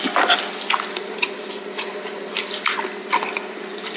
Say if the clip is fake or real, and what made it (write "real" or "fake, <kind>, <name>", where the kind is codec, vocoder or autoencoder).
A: real